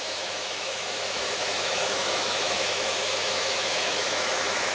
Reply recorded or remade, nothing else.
remade